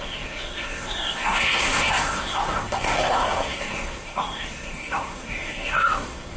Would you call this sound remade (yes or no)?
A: yes